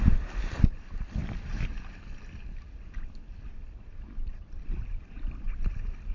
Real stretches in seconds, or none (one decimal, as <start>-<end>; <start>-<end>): 0.0-6.1